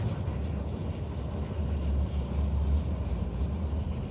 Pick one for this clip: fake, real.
real